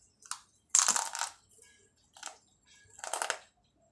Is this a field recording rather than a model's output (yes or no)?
yes